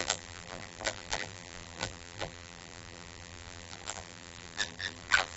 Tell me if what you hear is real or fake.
fake